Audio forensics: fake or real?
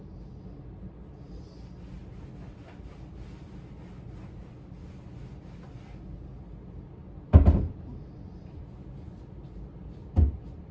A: real